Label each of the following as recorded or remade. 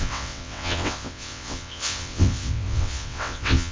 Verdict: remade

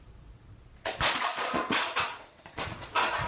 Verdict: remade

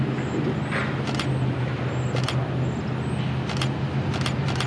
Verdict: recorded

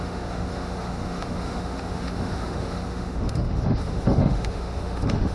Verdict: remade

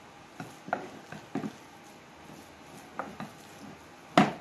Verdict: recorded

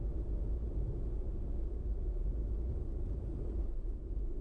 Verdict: remade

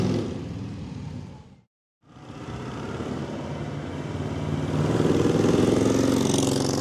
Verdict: recorded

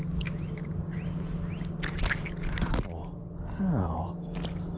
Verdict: recorded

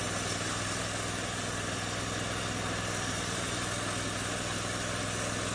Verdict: recorded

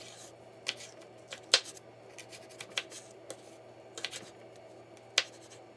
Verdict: recorded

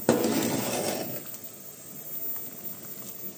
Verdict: recorded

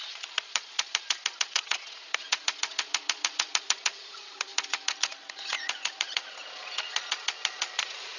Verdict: remade